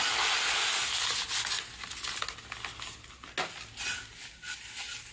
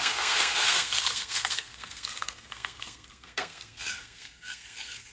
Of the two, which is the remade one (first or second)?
second